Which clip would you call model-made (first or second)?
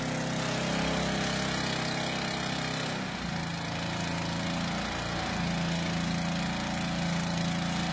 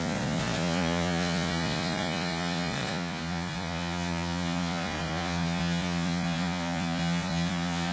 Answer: second